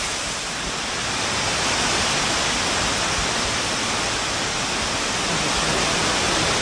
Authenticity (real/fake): real